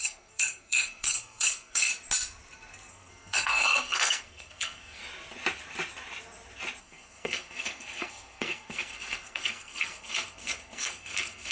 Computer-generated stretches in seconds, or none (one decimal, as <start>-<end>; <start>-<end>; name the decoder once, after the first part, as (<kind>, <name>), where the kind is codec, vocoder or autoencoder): 0.0-1.9 (codec, SNAC); 2.9-5.0; 6.8-11.5